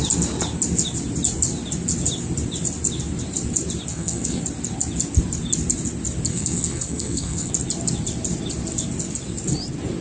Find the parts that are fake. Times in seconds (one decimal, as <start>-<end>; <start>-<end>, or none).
3.9-4.4; 6.3-7.5